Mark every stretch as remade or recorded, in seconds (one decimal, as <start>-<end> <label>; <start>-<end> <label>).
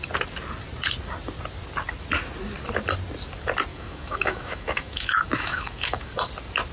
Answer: 0.0-3.7 recorded; 3.7-6.1 remade; 6.1-6.7 recorded